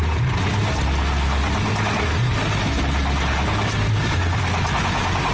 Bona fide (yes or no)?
yes